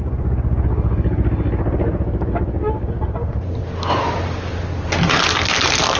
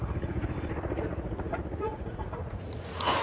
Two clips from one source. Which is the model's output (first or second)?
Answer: second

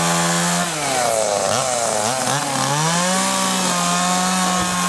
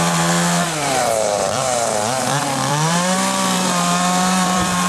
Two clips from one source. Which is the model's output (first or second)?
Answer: second